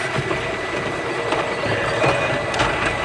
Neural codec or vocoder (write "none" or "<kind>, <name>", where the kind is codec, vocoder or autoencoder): none